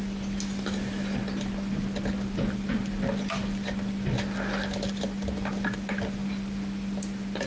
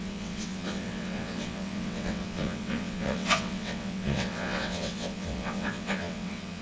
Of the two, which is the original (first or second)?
first